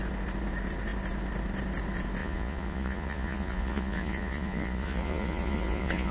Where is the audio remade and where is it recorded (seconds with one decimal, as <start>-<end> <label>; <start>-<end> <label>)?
0.0-2.2 recorded; 2.2-6.1 remade

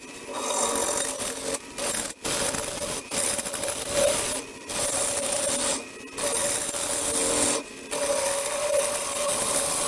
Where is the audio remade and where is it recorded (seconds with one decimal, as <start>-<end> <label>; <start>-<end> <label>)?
0.0-9.9 recorded

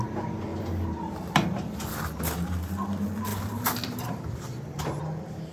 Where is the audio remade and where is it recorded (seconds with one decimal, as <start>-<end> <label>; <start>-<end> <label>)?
0.0-0.5 recorded; 0.5-1.9 remade; 1.9-3.3 recorded; 3.3-5.0 remade; 5.0-5.5 recorded

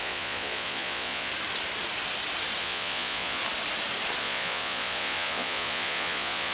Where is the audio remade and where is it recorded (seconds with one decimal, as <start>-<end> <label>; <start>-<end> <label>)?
0.0-1.3 remade; 1.3-2.6 recorded; 2.6-3.4 remade; 3.4-4.2 recorded; 4.2-6.5 remade

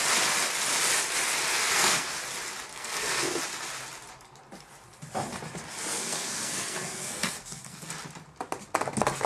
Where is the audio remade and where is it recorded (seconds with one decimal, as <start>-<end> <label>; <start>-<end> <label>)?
0.0-1.5 recorded; 1.5-2.2 remade; 2.2-2.7 recorded; 2.7-3.4 remade; 3.4-5.9 recorded; 5.9-7.9 remade; 7.9-9.3 recorded

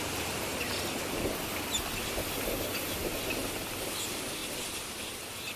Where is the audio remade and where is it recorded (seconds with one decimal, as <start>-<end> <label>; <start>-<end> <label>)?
0.0-0.5 recorded; 0.5-1.5 remade; 1.5-5.6 recorded

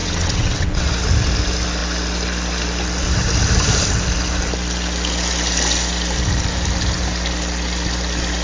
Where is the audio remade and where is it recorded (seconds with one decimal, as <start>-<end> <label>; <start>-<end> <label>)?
0.0-0.9 remade; 0.9-8.4 recorded